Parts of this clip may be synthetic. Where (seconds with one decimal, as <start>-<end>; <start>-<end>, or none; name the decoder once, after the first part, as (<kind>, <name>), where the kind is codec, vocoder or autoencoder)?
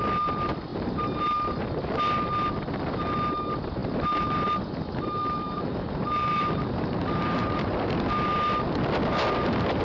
0.7-1.2 (vocoder, BigVGAN v2); 5.2-8.1